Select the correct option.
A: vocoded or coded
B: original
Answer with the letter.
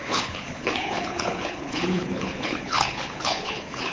A